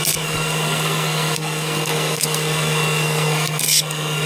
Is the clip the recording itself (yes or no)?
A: no